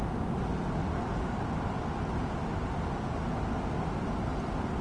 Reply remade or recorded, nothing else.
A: recorded